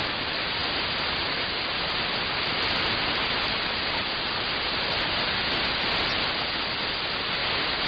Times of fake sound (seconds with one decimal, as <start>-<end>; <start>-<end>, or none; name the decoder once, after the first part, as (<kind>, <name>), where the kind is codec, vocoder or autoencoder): none